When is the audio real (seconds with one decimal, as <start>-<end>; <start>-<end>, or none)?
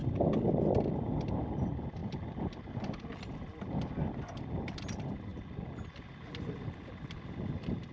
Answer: 0.0-7.9